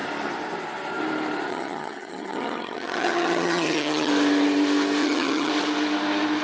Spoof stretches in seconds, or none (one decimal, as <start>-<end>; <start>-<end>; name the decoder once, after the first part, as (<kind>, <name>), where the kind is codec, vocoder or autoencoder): 1.5-4.1 (vocoder, HiFi-GAN); 5.0-5.5